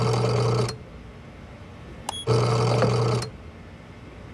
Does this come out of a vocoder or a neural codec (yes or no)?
no